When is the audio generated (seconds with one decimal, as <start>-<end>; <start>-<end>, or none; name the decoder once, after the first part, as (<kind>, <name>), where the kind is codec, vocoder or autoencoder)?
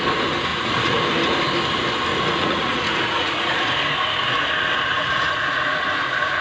0.5-1.0 (vocoder, Vocos); 2.1-3.7; 4.9-6.4